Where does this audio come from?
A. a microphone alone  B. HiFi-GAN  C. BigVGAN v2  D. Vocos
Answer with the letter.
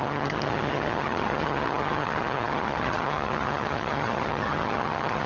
B